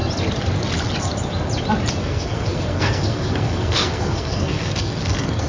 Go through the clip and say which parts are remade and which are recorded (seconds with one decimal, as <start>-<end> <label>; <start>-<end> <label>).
0.0-2.0 recorded; 2.0-5.5 remade